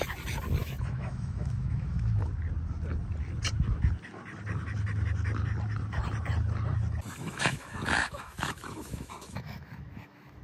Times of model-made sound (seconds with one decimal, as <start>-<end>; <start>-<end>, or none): 0.6-2.3; 7.2-10.4